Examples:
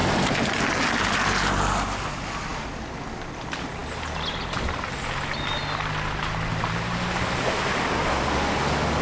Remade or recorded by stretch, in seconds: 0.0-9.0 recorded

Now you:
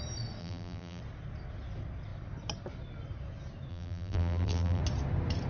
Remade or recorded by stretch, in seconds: 0.0-0.4 recorded; 0.4-1.0 remade; 1.0-3.7 recorded; 3.7-4.8 remade; 4.8-5.5 recorded

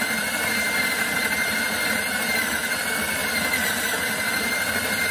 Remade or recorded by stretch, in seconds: 0.0-5.1 recorded

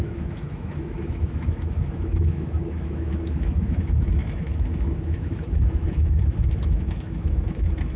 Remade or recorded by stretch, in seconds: 0.0-8.0 remade

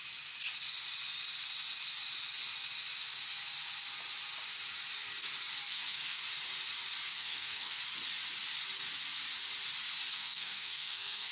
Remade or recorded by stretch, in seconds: 0.0-5.7 recorded; 5.7-6.2 remade; 6.2-7.1 recorded; 7.1-7.8 remade; 7.8-10.1 recorded; 10.1-11.3 remade

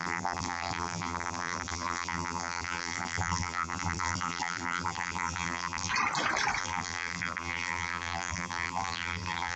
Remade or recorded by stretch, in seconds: 0.0-5.9 remade; 5.9-6.6 recorded; 6.6-9.6 remade